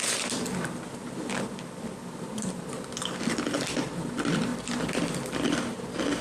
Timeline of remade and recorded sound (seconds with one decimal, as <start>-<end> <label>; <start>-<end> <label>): 0.0-6.2 recorded